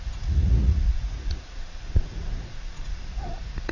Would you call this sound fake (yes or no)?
yes